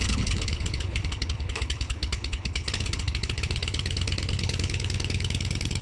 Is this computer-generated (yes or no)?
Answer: yes